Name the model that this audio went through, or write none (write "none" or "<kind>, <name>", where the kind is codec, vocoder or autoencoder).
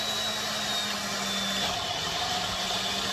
none